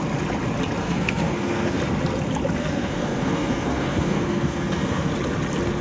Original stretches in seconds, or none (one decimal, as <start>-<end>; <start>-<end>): 0.0-0.8; 1.8-2.6; 5.1-5.8